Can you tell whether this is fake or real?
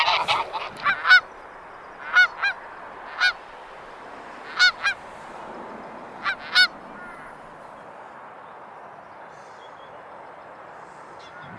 real